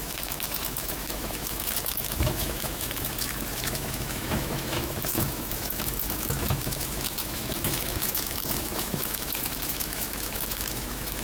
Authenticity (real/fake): fake